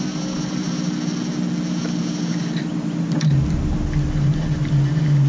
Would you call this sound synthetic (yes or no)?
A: no